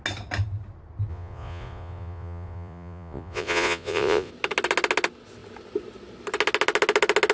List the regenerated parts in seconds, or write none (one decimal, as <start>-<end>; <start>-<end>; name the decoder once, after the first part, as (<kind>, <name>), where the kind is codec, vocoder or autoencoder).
1.1-4.3 (vocoder, Vocos)